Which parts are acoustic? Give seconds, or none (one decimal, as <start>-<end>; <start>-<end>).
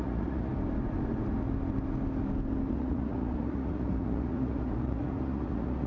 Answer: 0.5-2.7